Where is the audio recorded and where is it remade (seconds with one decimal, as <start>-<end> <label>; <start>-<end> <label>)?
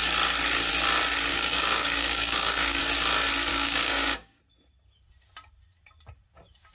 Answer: 0.0-1.3 recorded; 1.3-2.8 remade; 2.8-3.5 recorded; 3.5-4.4 remade; 4.4-6.7 recorded